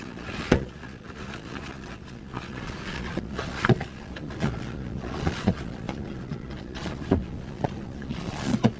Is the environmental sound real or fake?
fake